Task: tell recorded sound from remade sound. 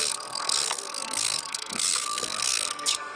remade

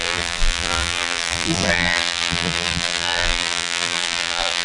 remade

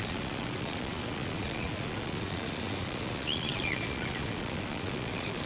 remade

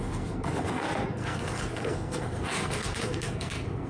remade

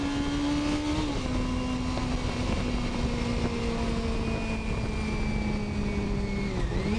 recorded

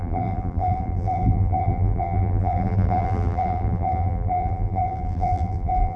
remade